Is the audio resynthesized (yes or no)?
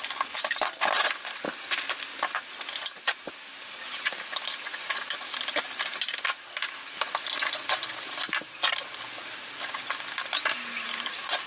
no